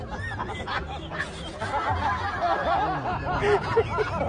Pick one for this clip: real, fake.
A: real